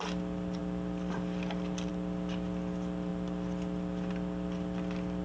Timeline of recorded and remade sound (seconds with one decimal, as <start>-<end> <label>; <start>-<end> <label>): 0.0-5.2 recorded